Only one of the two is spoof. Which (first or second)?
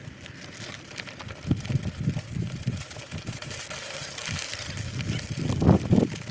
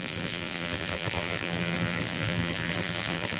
second